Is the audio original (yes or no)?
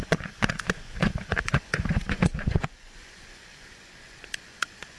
no